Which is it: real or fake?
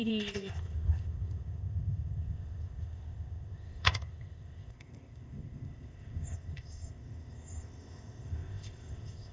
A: fake